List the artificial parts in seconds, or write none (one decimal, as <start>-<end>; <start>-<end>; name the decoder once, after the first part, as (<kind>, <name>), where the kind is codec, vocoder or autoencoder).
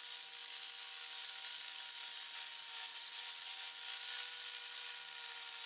2.9-3.8 (vocoder, WaveNeXt)